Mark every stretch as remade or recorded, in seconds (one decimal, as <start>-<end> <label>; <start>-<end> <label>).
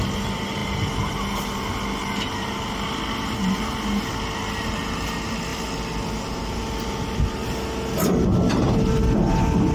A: 0.0-9.7 recorded